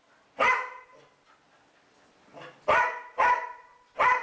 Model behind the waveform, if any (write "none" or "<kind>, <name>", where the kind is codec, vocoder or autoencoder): none